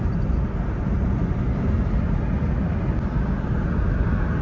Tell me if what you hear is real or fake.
real